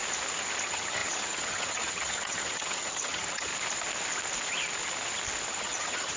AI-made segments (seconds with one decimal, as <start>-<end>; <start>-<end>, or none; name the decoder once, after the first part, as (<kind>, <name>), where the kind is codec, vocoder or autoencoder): 0.6-3.5 (vocoder, HiFi-GAN); 5.5-6.2